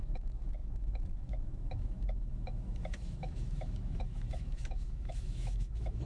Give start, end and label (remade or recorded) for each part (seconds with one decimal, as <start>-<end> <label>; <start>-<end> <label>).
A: 0.0-6.1 remade